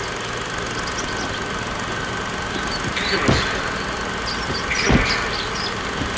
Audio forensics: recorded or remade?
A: recorded